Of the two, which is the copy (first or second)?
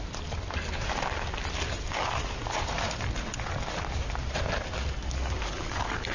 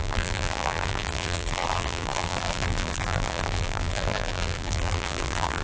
second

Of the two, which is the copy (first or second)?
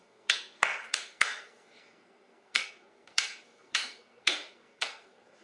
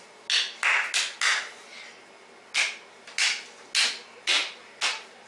first